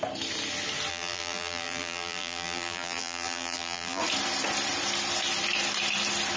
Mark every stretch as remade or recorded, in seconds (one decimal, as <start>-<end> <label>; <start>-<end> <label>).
0.0-0.9 recorded; 0.9-4.0 remade; 4.0-6.4 recorded